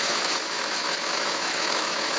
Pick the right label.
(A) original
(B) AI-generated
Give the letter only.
B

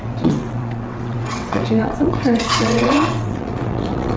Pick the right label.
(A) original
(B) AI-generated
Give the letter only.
B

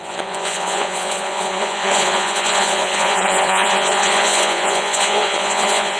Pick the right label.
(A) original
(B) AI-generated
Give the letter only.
B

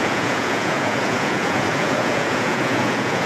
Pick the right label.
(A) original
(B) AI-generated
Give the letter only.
B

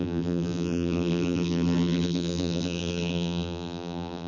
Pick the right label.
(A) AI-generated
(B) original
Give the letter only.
A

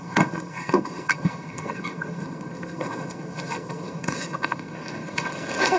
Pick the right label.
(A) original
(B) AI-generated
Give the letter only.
B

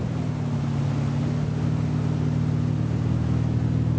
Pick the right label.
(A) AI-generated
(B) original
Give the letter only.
B